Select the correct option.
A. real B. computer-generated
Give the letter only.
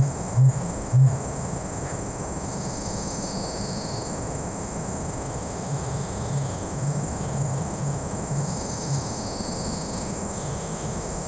B